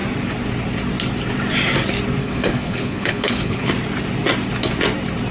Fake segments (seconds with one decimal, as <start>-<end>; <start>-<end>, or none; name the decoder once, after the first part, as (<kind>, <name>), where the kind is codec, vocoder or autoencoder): 2.2-3.7 (codec, HILCodec)